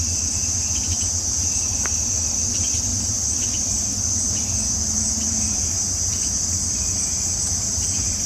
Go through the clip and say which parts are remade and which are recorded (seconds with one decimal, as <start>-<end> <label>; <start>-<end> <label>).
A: 0.0-0.4 recorded; 0.4-1.9 remade; 1.9-2.9 recorded; 2.9-6.8 remade; 6.8-8.3 recorded